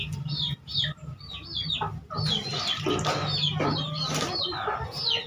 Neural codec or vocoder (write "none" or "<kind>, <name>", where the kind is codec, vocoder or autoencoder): none